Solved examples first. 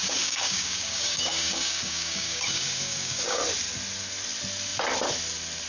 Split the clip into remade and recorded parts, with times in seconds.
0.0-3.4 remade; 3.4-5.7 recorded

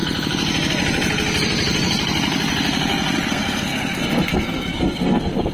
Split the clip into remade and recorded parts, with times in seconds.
0.0-3.3 recorded; 3.3-5.5 remade

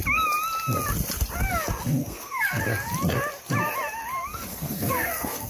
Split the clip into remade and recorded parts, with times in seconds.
0.0-2.0 recorded; 2.0-2.6 remade; 2.6-4.5 recorded; 4.5-5.5 remade

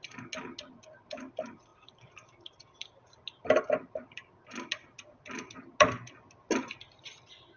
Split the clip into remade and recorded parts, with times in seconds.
0.0-7.6 recorded